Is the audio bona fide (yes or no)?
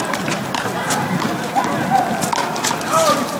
yes